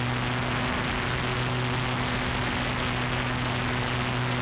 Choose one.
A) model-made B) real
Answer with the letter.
B